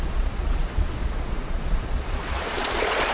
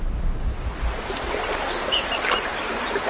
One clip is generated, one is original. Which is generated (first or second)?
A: first